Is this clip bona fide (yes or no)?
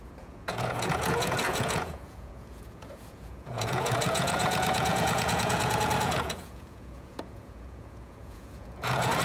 no